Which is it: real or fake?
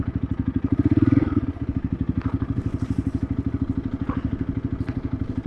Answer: real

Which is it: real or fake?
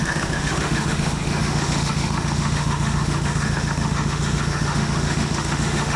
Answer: fake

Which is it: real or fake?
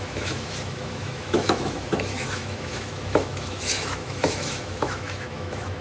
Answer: fake